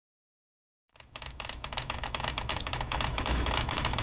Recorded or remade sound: remade